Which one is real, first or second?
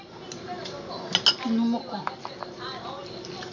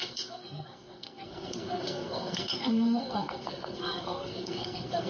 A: first